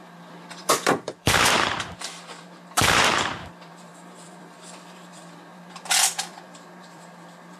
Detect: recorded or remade remade